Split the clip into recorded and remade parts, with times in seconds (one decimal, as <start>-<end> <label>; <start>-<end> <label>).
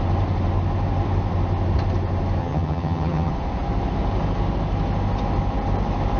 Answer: 0.0-2.4 recorded; 2.4-3.3 remade; 3.3-6.2 recorded